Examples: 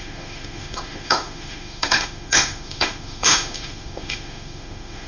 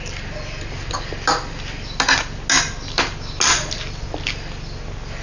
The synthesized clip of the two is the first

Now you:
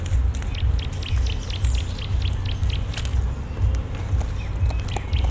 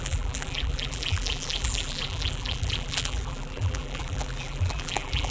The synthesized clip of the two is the second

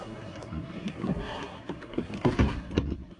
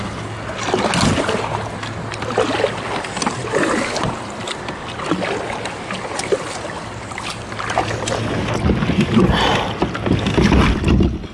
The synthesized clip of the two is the first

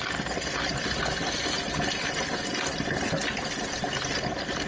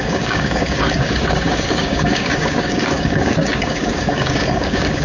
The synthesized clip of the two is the second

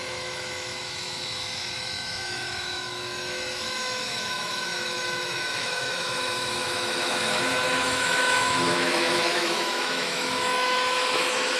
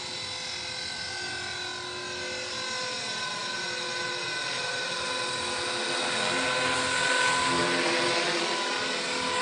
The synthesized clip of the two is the first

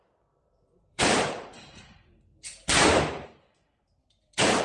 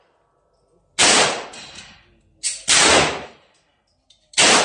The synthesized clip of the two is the first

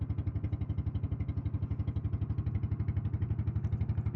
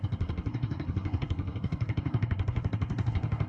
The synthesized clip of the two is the second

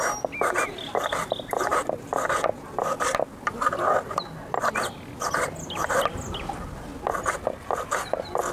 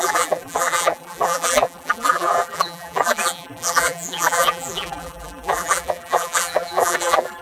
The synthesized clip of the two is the second